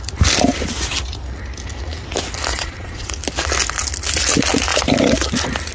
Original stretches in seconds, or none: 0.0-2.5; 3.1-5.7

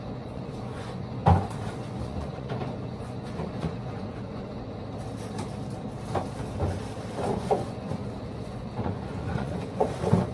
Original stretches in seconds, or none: 1.2-1.7; 4.8-7.3

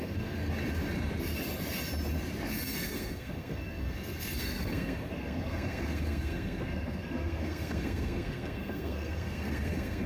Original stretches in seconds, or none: 0.4-2.5

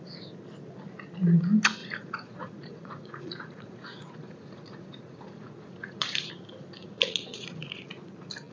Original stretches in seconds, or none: 0.0-1.8; 6.3-6.8; 8.0-8.5

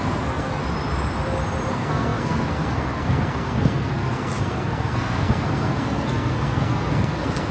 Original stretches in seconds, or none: 0.6-1.7

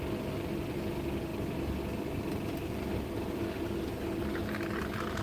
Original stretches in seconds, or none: 0.0-5.2

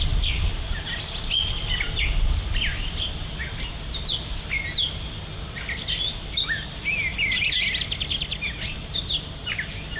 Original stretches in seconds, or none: 0.0-10.0